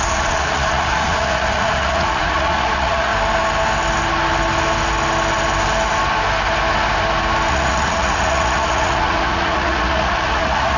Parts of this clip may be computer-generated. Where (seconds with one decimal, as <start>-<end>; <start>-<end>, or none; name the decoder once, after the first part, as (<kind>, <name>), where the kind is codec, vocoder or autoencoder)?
0.0-3.1 (vocoder, Vocos); 7.5-10.8